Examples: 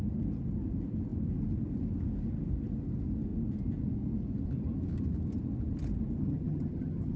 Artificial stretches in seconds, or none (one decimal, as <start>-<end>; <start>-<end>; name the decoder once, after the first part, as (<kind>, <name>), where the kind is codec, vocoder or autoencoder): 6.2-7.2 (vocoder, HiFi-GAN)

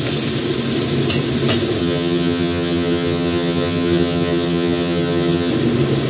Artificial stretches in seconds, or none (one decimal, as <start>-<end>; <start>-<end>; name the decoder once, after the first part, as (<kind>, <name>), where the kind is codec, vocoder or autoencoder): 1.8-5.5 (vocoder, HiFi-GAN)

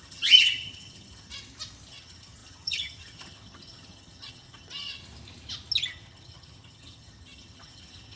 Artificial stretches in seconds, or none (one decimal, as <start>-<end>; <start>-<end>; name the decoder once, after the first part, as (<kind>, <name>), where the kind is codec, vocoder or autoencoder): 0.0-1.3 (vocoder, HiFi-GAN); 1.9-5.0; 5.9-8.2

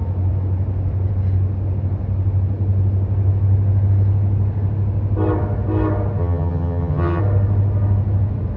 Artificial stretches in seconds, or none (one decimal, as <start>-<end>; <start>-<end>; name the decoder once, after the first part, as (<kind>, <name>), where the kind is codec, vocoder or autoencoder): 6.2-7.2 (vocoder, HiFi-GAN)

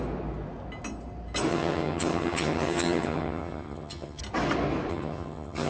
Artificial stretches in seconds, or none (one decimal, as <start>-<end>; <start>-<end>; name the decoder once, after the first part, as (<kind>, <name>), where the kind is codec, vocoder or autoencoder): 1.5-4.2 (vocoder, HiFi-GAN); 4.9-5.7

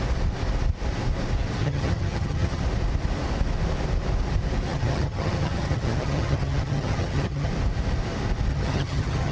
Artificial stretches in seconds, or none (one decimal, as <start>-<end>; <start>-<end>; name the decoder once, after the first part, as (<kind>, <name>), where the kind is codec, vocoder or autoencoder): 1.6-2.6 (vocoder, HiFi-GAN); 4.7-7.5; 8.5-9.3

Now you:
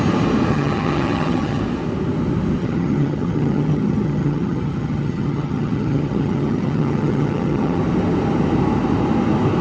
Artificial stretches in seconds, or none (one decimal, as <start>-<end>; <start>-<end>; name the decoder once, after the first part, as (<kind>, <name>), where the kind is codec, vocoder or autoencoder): 0.5-1.6 (vocoder, HiFi-GAN); 2.6-7.8